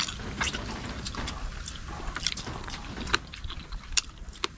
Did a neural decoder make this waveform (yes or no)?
no